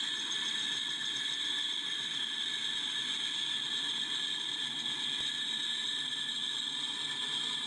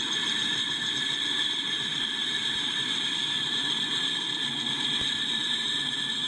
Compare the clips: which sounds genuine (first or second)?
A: first